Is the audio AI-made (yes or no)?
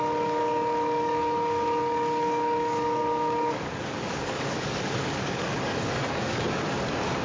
yes